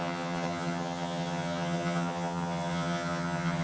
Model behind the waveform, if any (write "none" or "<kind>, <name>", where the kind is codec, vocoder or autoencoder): vocoder, HiFi-GAN